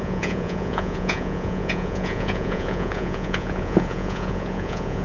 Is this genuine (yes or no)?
no